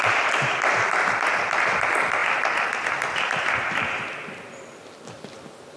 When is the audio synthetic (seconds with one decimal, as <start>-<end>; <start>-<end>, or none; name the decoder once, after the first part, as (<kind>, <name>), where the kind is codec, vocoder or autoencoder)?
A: none